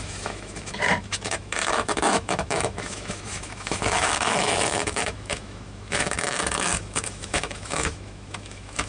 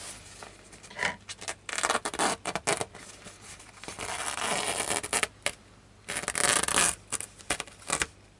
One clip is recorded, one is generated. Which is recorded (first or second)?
second